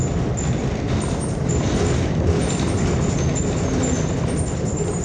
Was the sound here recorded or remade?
recorded